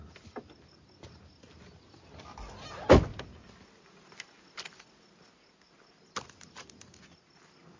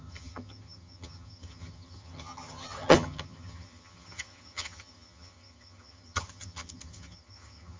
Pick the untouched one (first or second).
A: first